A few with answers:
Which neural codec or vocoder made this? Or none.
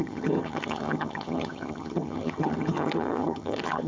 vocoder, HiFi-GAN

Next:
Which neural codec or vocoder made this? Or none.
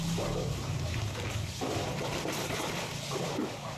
none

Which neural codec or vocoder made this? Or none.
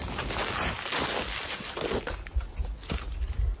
none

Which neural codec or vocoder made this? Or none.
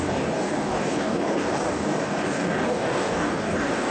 codec, DAC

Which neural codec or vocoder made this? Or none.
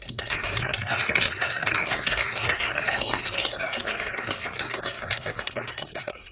codec, SNAC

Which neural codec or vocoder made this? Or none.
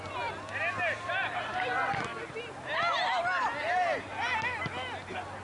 none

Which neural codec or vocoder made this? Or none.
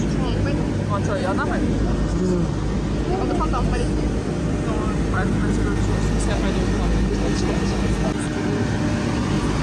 none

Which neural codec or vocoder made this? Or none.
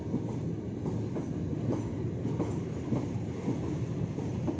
none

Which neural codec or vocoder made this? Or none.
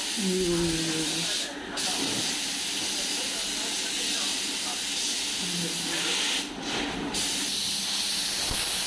none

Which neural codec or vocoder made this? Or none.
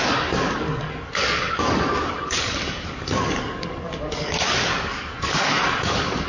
codec, DAC